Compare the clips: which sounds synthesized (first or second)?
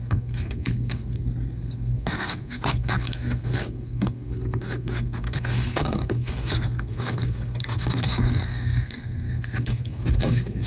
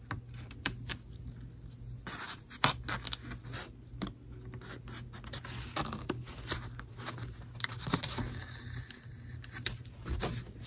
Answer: first